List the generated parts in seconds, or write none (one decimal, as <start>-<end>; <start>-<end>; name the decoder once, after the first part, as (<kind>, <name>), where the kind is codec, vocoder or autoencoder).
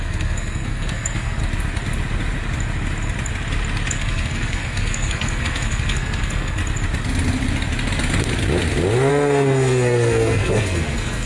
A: 0.0-1.4 (codec, SNAC); 3.9-6.6; 9.1-11.3